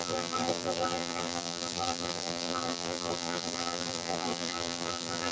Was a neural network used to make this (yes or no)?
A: yes